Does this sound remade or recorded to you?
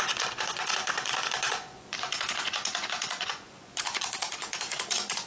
remade